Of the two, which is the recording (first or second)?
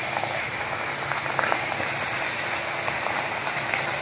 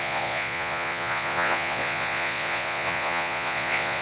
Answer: first